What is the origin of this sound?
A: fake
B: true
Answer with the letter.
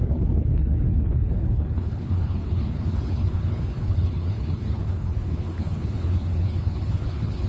A